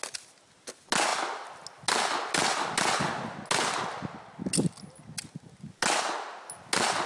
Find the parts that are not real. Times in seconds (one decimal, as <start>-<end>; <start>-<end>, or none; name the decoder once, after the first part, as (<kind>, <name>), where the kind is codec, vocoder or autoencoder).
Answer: none